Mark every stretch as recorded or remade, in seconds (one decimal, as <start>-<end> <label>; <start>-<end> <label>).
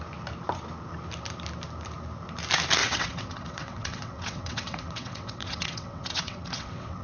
0.0-2.8 recorded; 2.8-7.0 remade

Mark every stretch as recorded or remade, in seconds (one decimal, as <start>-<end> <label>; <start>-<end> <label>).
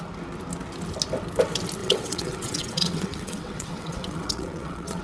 0.0-1.8 recorded; 1.8-5.0 remade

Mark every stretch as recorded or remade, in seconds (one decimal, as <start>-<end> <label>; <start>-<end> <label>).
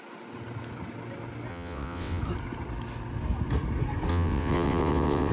0.0-1.5 recorded; 1.5-2.2 remade; 2.2-4.1 recorded; 4.1-5.3 remade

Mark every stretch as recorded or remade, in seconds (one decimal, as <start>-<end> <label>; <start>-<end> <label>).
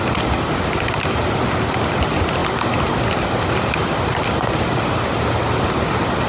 0.0-6.3 recorded